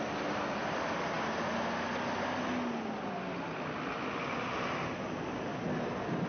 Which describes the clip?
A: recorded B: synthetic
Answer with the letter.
A